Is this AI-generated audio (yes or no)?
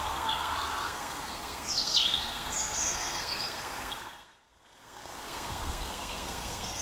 yes